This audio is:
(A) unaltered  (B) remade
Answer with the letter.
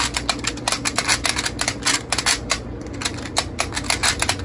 A